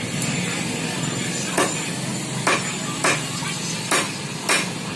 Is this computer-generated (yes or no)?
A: no